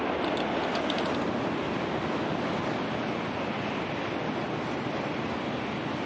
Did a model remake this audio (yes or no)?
no